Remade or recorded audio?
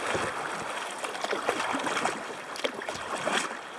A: recorded